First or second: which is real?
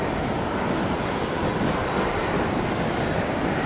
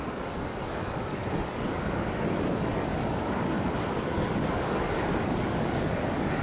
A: first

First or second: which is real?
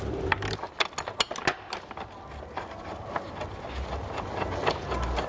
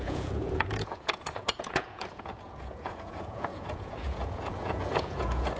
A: first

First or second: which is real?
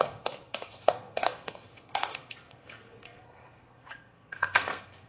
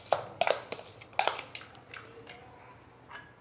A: second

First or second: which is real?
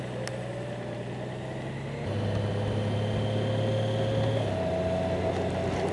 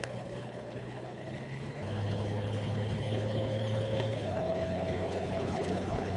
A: first